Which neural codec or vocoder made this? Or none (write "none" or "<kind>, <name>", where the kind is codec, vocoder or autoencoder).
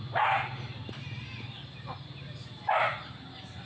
none